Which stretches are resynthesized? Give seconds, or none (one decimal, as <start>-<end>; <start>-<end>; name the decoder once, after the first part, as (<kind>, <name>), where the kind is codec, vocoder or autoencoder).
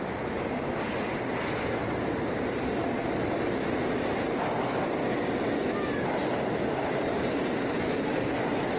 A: 6.2-8.4 (vocoder, BigVGAN v2)